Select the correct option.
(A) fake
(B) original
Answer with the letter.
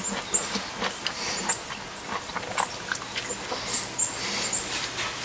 B